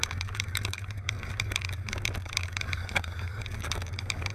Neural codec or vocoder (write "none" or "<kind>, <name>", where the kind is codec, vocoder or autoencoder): codec, DAC